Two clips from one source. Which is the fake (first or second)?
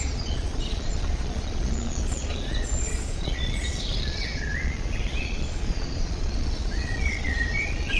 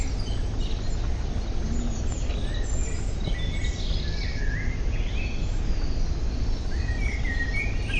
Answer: first